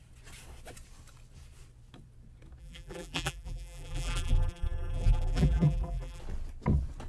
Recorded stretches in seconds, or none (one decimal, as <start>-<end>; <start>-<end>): 0.0-2.6; 6.2-7.1